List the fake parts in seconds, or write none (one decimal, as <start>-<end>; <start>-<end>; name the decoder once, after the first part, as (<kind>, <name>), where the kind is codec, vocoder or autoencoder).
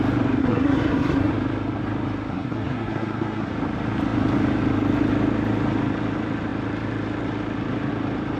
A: 0.4-1.3 (codec, SNAC); 2.3-3.5